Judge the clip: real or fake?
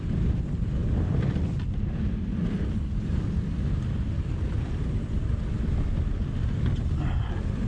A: real